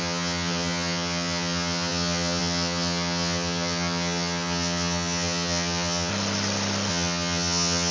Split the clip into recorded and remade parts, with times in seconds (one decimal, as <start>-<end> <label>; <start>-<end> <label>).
0.0-6.1 remade; 6.1-6.9 recorded; 6.9-7.9 remade